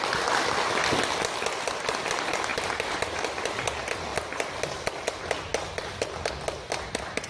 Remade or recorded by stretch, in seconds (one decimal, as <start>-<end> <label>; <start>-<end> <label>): 0.0-2.5 recorded; 2.5-3.4 remade; 3.4-4.1 recorded; 4.1-4.9 remade; 4.9-7.3 recorded